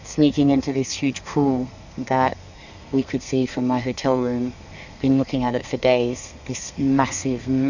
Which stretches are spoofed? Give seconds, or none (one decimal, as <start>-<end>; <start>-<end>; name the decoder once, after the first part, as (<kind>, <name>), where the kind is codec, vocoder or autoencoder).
0.0-7.7 (codec, SNAC)